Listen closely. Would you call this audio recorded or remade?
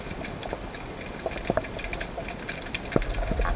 remade